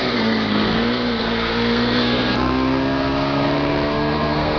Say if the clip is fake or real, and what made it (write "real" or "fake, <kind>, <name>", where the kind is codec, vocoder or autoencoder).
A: fake, codec, SNAC